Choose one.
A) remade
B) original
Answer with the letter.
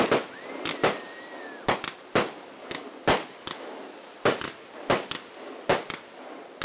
B